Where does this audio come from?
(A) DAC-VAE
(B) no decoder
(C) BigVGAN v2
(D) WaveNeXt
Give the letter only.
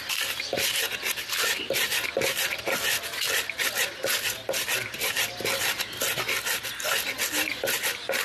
B